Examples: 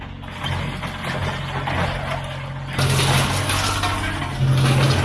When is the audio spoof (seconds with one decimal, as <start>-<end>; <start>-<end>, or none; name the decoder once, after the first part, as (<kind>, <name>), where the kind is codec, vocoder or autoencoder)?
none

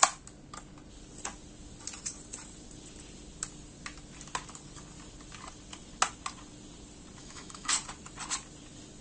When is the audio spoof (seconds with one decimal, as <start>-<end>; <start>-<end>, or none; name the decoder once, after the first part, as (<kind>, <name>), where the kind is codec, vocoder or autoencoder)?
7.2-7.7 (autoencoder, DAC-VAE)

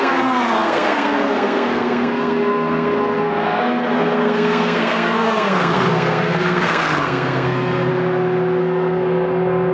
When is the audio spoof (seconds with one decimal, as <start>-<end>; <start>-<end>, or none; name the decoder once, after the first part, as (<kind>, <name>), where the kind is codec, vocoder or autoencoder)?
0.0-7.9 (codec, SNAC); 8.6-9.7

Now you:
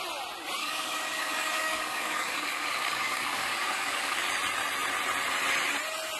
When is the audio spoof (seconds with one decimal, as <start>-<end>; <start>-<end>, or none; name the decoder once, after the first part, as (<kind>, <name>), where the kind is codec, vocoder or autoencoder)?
0.6-4.3 (codec, DAC)